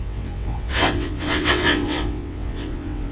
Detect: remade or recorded remade